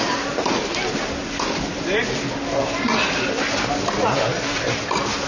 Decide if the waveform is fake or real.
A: real